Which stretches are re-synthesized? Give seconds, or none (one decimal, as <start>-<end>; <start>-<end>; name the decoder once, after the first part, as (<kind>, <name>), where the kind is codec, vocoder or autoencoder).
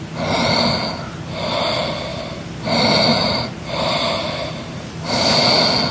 2.1-2.7 (vocoder, BigVGAN v2); 3.1-3.6; 4.4-5.2